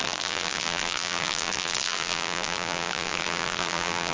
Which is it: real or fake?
fake